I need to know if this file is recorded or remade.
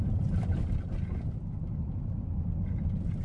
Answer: recorded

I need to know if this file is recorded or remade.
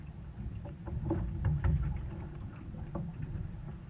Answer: recorded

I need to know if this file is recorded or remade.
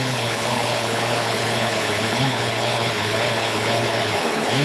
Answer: remade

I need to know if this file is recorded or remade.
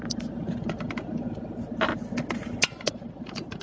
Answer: recorded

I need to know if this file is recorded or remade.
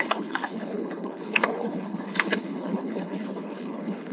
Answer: remade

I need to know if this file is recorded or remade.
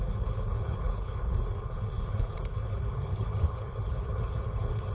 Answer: remade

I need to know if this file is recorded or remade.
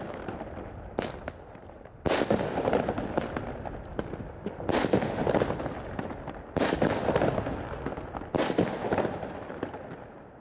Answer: recorded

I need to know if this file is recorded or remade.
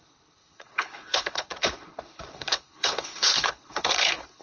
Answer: remade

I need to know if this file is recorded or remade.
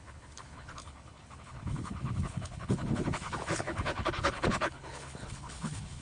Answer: remade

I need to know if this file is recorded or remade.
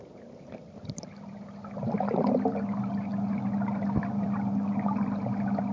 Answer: recorded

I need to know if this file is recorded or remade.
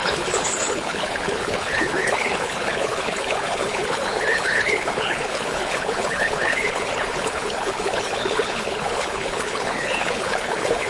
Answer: remade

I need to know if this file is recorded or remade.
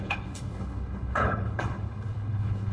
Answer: remade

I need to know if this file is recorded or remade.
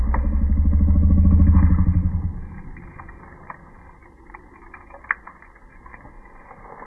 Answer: recorded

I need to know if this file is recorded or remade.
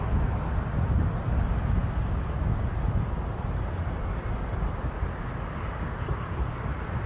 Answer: recorded